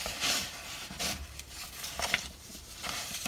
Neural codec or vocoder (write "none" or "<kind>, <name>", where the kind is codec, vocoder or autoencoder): none